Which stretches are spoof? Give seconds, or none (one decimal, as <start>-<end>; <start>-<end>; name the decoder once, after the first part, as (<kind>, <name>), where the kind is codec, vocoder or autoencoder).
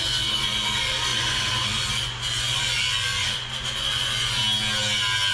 0.0-4.4 (vocoder, Vocos)